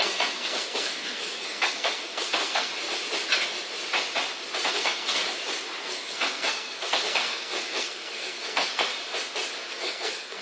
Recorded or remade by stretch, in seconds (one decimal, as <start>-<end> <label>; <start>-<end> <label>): 0.0-2.7 remade; 2.7-4.7 recorded; 4.7-5.2 remade; 5.2-5.8 recorded; 5.8-8.9 remade; 8.9-9.7 recorded; 9.7-10.4 remade